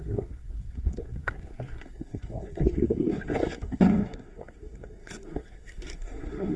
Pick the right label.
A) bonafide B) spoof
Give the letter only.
B